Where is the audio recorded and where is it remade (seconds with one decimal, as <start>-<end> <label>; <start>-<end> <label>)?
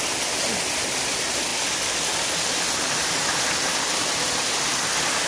0.0-5.3 recorded